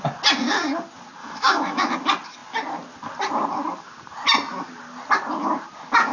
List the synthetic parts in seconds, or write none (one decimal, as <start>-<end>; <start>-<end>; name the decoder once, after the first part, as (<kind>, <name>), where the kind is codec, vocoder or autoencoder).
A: 1.2-1.9 (autoencoder, DAC-VAE)